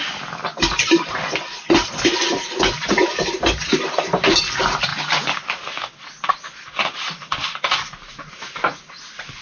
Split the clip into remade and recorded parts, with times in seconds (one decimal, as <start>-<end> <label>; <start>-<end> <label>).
0.0-9.4 recorded